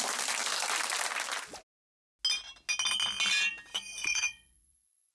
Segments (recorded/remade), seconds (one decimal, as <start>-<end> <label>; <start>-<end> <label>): 0.0-4.0 recorded; 4.0-5.1 remade